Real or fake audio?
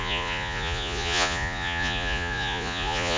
fake